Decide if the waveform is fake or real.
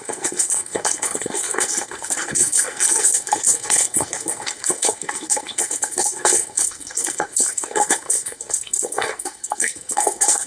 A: fake